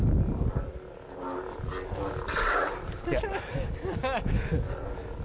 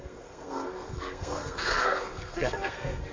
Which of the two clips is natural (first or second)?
first